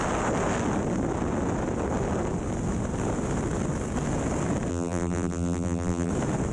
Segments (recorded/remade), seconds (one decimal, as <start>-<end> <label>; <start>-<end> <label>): 0.0-4.7 recorded; 4.7-6.1 remade; 6.1-6.5 recorded